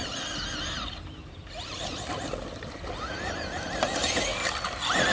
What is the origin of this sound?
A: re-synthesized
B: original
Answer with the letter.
B